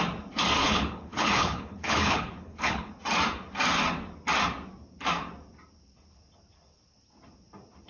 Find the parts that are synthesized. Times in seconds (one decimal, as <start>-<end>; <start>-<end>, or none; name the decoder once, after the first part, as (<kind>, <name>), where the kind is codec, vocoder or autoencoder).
0.6-2.9 (codec, HILCodec)